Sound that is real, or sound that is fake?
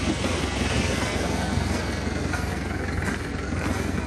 fake